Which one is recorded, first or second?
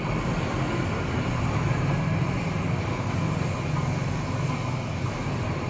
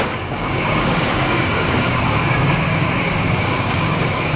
first